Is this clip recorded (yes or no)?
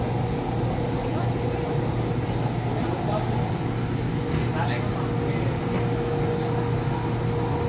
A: yes